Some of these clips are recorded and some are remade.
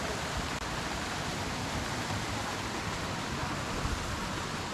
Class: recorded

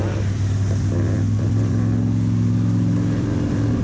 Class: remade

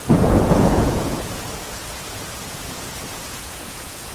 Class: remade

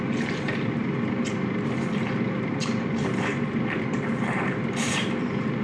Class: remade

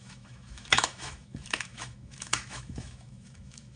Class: remade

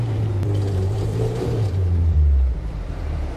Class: remade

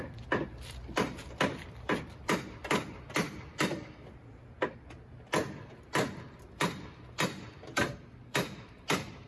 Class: remade